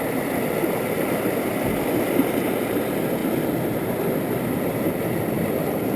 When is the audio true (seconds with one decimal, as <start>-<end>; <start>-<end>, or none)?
0.0-6.0